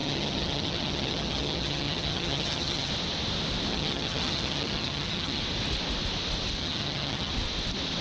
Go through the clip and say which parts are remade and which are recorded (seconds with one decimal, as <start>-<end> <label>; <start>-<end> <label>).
0.0-2.9 remade; 2.9-3.7 recorded; 3.7-5.4 remade; 5.4-6.6 recorded; 6.6-7.3 remade; 7.3-8.0 recorded